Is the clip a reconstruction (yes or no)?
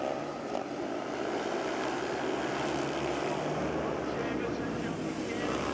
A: no